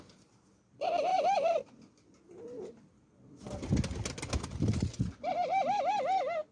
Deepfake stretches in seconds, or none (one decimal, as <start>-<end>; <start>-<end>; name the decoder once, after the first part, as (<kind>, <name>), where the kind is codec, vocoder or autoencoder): none